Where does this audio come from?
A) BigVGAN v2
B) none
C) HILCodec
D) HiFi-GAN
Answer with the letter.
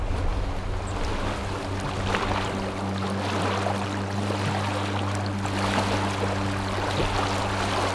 B